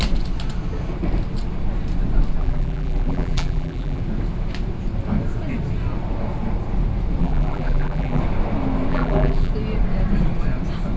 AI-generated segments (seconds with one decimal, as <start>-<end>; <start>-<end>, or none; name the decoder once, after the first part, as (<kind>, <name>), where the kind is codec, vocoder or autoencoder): 2.4-4.0 (vocoder, BigVGAN v2); 7.2-8.2; 8.9-9.5